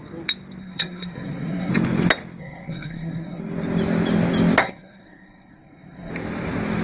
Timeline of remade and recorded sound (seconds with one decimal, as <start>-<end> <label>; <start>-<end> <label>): 0.0-0.6 recorded; 0.6-1.7 remade; 1.7-2.4 recorded; 2.4-3.4 remade; 3.4-4.6 recorded; 4.6-6.1 remade; 6.1-6.8 recorded